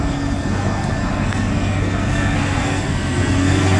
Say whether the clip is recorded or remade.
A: remade